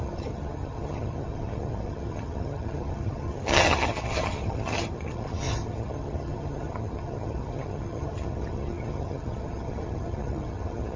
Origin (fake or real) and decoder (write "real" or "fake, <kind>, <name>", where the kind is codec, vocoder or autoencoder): fake, vocoder, HiFi-GAN